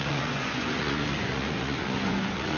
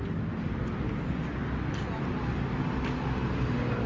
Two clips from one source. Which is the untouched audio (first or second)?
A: second